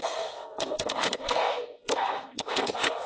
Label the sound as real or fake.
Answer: fake